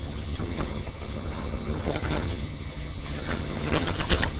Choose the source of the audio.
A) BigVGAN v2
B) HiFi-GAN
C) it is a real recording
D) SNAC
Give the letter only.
B